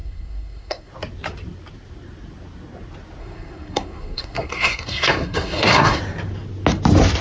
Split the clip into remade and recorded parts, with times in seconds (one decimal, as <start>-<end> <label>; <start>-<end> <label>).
0.0-0.9 remade; 0.9-3.2 recorded; 3.2-6.0 remade; 6.0-7.2 recorded